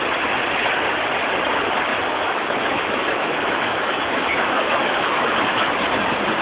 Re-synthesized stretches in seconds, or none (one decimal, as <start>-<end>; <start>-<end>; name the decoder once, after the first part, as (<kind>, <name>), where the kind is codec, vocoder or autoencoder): 1.9-5.7 (autoencoder, DAC-VAE)